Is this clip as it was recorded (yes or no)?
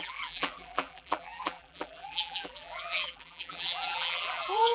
no